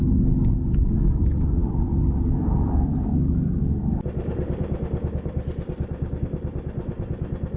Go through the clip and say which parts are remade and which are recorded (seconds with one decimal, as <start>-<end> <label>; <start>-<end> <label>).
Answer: 0.0-1.6 recorded; 1.6-6.2 remade; 6.2-7.6 recorded